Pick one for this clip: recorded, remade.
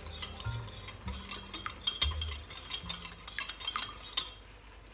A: recorded